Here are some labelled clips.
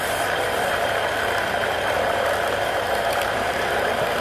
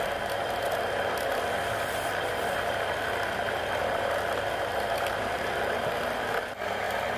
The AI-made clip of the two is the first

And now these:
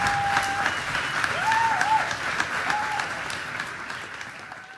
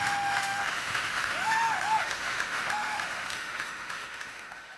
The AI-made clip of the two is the second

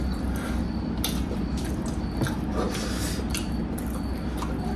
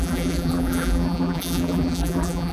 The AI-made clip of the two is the second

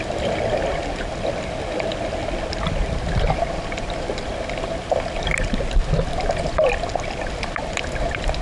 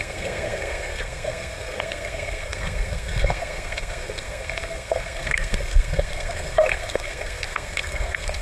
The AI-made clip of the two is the second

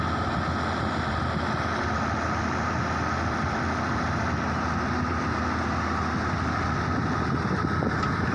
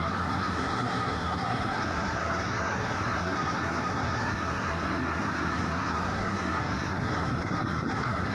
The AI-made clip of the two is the second